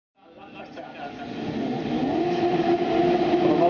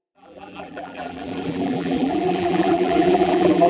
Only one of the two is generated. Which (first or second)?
second